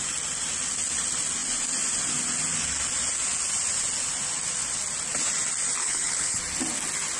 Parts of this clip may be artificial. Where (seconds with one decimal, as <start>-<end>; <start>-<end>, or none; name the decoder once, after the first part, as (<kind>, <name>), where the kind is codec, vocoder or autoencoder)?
5.8-6.4 (codec, HILCodec)

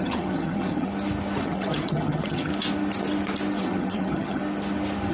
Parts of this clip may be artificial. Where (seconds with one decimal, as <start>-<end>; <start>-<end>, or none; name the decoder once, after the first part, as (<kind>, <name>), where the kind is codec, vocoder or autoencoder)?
0.0-0.9 (vocoder, HiFi-GAN); 1.4-2.5; 3.6-4.4

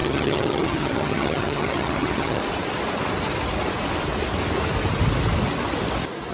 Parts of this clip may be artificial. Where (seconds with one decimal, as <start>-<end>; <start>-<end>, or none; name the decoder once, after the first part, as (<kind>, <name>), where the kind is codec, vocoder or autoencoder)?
0.0-2.4 (vocoder, HiFi-GAN)

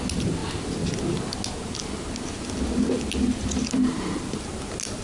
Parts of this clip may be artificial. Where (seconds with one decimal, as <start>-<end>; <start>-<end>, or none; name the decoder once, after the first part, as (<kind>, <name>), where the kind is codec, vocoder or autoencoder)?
none

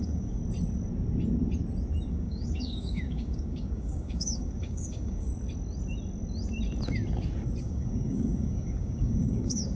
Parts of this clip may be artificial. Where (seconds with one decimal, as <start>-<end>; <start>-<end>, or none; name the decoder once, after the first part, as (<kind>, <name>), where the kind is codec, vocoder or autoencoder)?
0.0-0.4 (codec, DAC); 2.1-5.3; 7.6-9.8

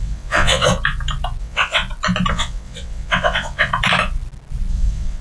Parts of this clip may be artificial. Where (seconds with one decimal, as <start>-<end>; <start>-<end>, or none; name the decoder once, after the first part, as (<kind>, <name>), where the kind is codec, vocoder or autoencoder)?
0.0-0.7 (vocoder, WaveNeXt); 1.4-1.8; 2.3-3.7; 4.7-5.2

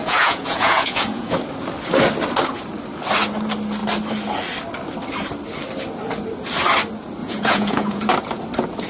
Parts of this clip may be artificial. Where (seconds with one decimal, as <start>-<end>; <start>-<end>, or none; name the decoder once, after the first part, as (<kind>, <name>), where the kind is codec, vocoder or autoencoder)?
0.0-1.3 (vocoder, Vocos); 7.2-8.1